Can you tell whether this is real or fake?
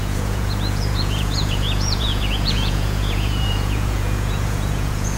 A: fake